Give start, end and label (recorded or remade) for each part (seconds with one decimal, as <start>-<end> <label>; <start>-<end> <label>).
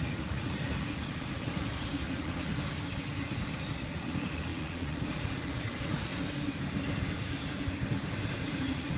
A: 0.0-2.5 remade; 2.5-3.5 recorded; 3.5-6.1 remade; 6.1-8.5 recorded; 8.5-9.0 remade